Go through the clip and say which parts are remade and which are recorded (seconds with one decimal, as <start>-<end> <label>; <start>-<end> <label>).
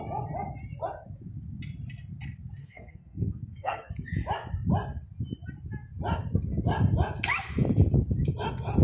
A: 0.0-2.6 recorded; 2.6-3.9 remade; 3.9-8.8 recorded